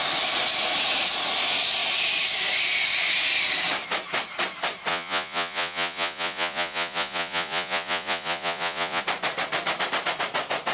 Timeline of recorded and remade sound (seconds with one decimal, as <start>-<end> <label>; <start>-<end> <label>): 0.0-4.9 recorded; 4.9-9.0 remade; 9.0-10.7 recorded